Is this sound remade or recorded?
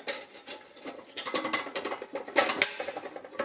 recorded